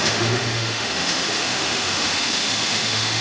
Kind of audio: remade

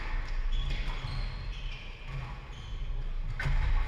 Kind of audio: recorded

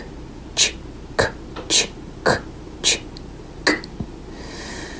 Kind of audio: recorded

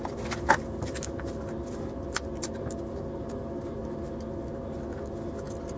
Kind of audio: recorded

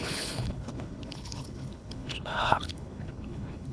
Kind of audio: remade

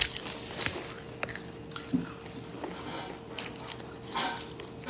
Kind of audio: recorded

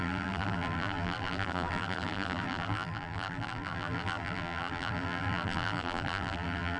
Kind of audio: remade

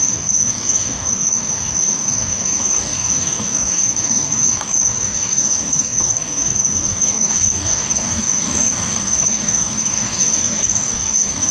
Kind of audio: remade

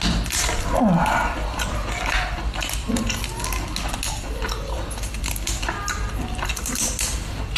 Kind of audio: recorded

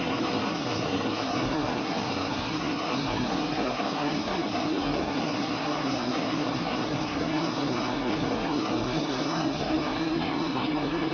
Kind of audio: remade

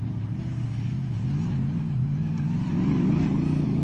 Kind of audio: recorded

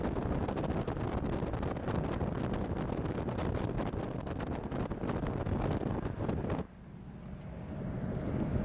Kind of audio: recorded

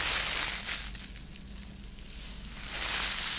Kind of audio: recorded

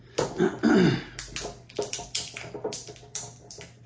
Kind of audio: recorded